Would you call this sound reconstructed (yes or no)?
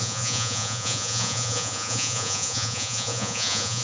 yes